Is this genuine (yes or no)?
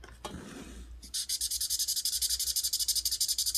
no